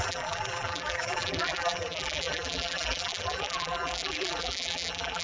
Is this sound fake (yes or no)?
yes